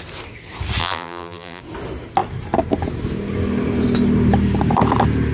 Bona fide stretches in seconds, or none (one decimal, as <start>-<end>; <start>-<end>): 0.0-0.8; 1.6-5.3